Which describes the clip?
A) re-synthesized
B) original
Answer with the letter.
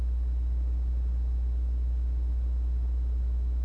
B